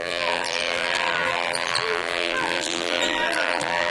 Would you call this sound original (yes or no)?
no